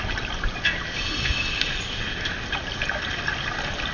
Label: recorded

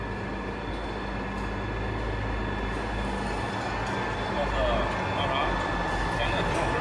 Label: recorded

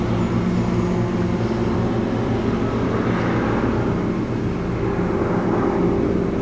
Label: recorded